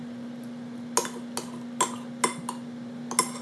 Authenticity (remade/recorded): recorded